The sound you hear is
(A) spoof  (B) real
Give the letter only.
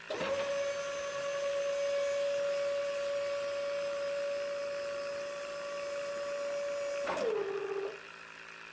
B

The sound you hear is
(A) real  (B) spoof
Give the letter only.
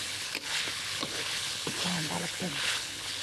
B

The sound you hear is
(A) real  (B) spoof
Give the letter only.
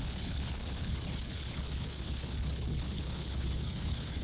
B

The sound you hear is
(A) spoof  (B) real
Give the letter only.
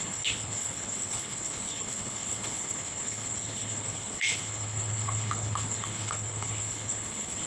A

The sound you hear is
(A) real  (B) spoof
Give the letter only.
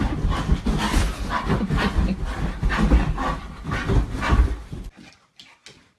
A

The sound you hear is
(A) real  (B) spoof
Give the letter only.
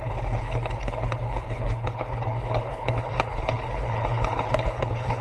B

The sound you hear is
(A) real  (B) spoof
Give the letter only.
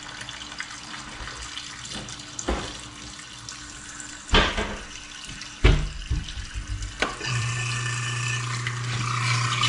A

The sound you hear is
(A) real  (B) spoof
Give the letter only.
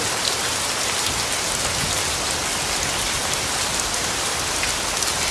A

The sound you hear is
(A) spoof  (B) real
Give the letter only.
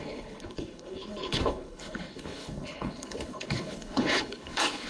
A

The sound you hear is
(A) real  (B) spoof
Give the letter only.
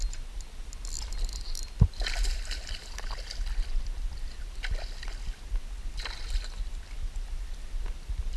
A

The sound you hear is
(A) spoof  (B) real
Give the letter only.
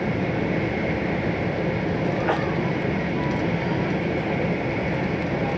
B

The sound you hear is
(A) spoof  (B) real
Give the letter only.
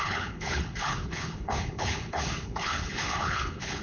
A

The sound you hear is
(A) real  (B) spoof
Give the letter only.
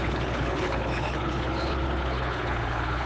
B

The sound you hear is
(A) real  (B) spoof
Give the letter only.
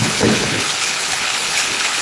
B